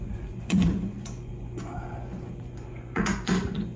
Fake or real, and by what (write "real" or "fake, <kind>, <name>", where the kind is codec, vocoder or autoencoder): fake, vocoder, Vocos